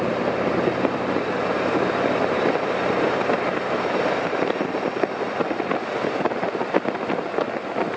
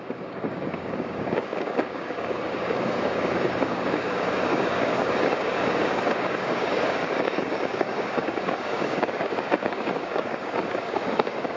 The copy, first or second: second